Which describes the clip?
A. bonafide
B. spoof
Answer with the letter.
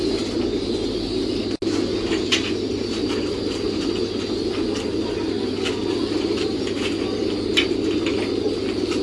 A